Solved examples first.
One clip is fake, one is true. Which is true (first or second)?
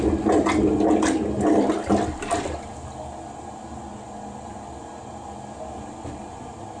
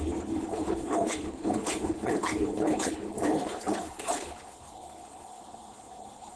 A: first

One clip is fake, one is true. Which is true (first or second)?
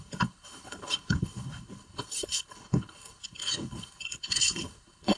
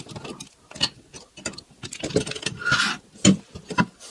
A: second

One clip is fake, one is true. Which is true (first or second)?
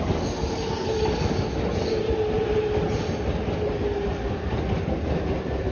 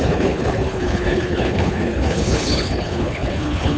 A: first